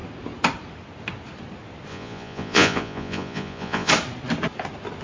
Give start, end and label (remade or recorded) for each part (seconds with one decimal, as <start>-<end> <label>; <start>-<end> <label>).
0.0-1.9 recorded; 1.9-3.9 remade; 3.9-5.0 recorded